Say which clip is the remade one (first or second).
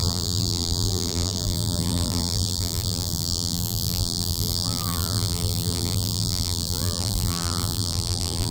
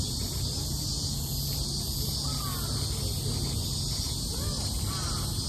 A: first